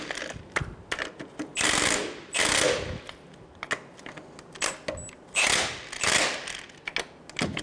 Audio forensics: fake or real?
real